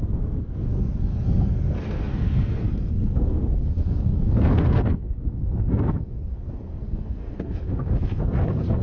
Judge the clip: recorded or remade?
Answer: remade